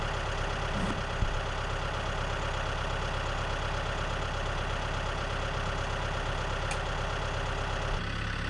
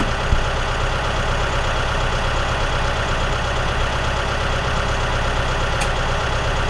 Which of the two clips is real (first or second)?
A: first